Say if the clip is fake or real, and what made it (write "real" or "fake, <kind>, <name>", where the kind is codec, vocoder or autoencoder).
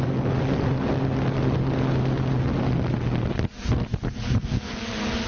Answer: real